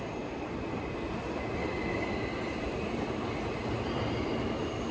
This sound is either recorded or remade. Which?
recorded